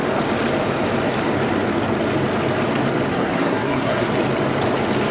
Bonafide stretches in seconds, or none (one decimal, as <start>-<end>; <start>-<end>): 0.0-3.1; 4.1-5.1